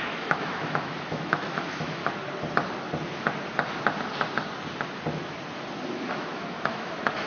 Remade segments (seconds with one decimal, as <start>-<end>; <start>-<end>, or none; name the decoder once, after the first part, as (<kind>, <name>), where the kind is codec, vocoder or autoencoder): 0.0-2.0 (autoencoder, DAC-VAE); 6.1-7.3